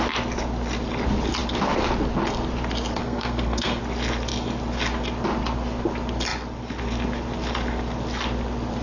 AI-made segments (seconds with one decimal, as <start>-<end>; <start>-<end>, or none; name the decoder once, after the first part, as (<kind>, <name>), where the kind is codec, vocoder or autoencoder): 3.0-3.8 (codec, SNAC)